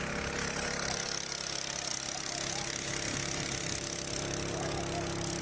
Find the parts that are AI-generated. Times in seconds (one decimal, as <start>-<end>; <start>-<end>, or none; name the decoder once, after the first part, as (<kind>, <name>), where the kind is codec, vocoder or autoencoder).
none